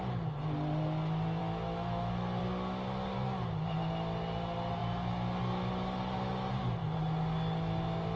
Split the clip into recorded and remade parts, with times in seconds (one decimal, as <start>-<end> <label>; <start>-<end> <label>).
0.0-1.4 recorded; 1.4-2.4 remade; 2.4-8.2 recorded